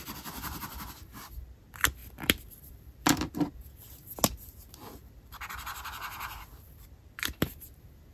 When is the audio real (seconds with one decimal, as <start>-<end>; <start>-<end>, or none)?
0.0-2.0; 3.3-5.0; 7.5-8.1